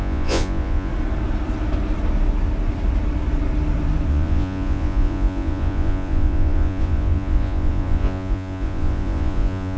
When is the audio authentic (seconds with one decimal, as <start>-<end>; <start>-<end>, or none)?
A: 0.9-4.1